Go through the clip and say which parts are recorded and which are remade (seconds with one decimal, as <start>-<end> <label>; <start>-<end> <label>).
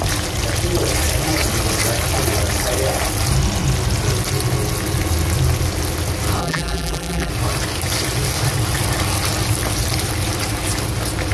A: 0.0-6.4 recorded; 6.4-7.3 remade; 7.3-11.3 recorded